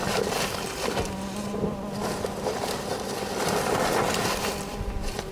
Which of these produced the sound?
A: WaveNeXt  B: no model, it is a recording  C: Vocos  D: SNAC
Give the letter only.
B